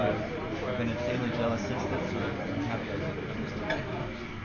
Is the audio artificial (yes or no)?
no